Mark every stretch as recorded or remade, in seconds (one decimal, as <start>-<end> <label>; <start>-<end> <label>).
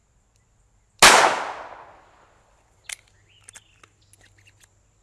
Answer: 0.0-5.0 recorded